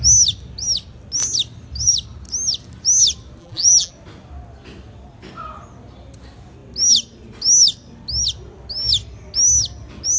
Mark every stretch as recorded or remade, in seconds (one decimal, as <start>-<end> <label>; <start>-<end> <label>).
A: 0.0-3.4 recorded; 3.4-3.9 remade; 3.9-10.2 recorded